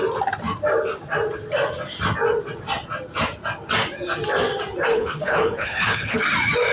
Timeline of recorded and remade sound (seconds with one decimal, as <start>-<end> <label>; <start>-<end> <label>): 0.0-4.9 recorded; 4.9-6.2 remade; 6.2-6.7 recorded